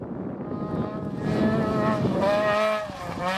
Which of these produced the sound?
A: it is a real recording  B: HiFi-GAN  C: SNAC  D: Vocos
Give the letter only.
A